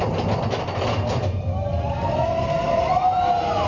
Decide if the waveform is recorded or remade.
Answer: recorded